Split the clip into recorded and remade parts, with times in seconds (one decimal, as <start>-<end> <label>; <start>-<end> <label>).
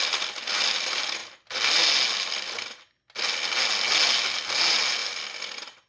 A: 0.0-5.9 recorded